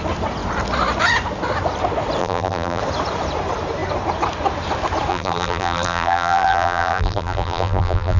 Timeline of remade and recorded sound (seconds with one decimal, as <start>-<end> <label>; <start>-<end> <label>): 0.0-2.2 recorded; 2.2-2.8 remade; 2.8-5.1 recorded; 5.1-8.2 remade